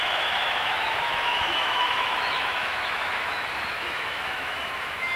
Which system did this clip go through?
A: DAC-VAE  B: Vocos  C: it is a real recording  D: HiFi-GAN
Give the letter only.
A